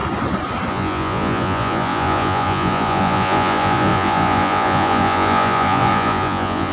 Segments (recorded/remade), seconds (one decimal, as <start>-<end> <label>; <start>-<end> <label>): 0.0-0.7 recorded; 0.7-6.7 remade